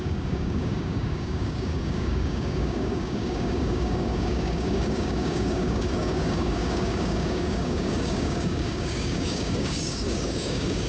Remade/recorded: remade